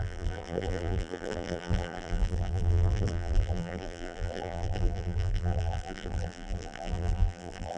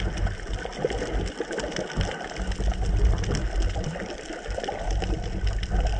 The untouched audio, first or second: second